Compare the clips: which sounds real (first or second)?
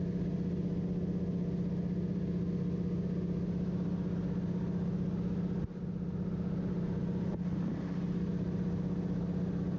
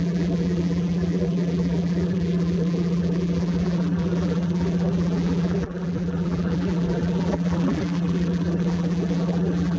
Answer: first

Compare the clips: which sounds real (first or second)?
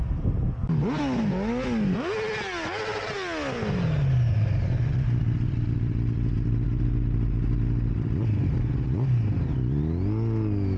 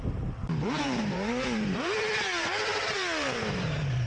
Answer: first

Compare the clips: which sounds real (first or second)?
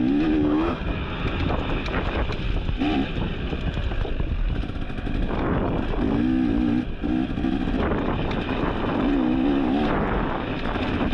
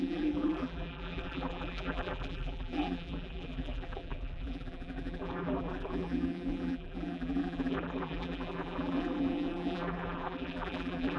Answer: first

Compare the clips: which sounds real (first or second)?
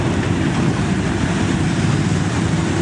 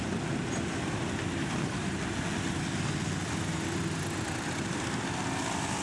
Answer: second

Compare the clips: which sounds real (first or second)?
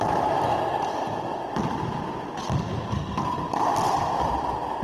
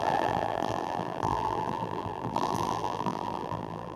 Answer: first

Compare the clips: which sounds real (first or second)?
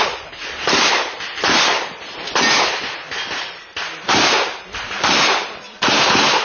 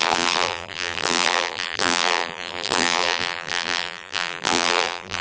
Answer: first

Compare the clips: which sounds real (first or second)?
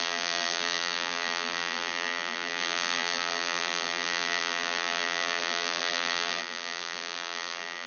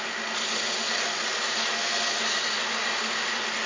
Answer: second